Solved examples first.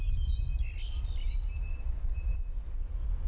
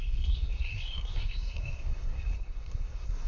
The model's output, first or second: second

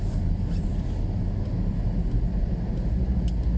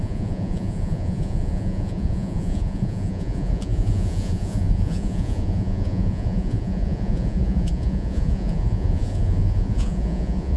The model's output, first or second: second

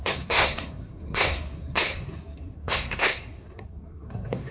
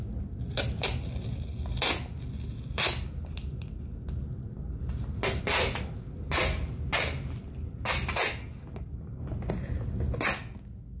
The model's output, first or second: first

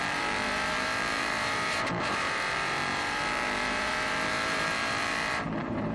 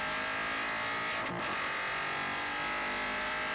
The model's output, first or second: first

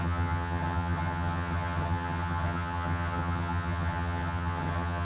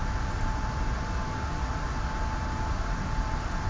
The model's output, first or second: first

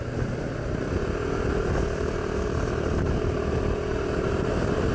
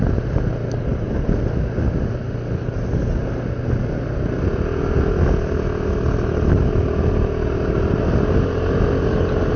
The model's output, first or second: first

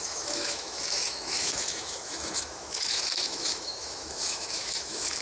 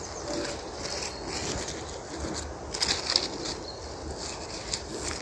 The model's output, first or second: first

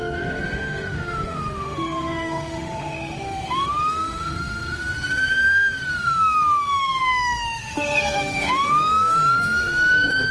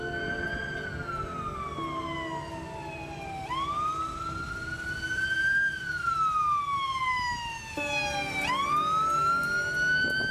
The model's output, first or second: first